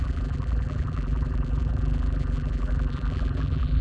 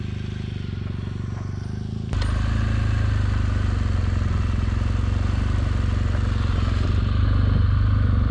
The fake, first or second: first